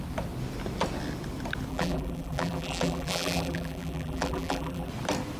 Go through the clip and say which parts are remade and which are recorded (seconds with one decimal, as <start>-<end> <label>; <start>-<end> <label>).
0.0-1.7 recorded; 1.7-4.9 remade; 4.9-5.4 recorded